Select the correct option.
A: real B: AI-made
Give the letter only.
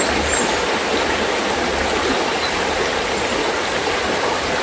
A